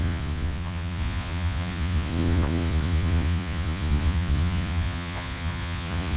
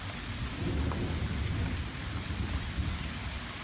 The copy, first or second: first